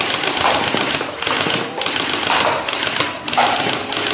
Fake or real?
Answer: real